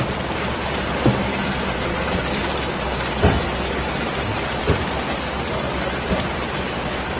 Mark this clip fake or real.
real